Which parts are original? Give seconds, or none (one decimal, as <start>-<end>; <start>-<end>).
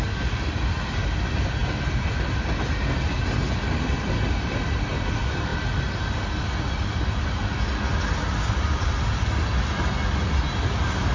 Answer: 0.0-11.1